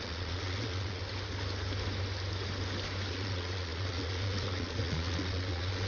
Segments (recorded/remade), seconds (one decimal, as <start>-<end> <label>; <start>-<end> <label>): 0.0-1.0 remade; 1.0-3.1 recorded; 3.1-5.9 remade